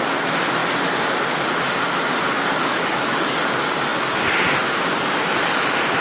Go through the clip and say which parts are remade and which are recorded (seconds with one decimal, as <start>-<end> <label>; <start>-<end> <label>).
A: 0.0-2.5 recorded; 2.5-3.4 remade; 3.4-6.0 recorded